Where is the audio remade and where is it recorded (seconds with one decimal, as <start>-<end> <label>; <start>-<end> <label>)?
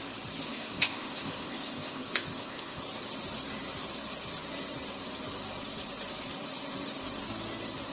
0.0-0.5 recorded; 0.5-2.8 remade; 2.8-7.9 recorded